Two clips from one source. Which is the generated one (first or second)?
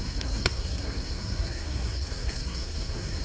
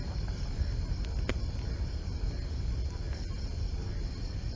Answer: first